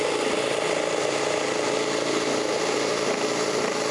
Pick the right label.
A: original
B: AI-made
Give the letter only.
A